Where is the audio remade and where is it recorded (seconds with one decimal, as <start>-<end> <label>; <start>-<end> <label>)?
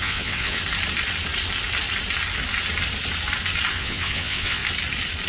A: 0.0-0.6 remade; 0.6-3.7 recorded; 3.7-4.6 remade; 4.6-5.3 recorded